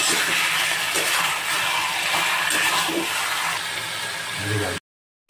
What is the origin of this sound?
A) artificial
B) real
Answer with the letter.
B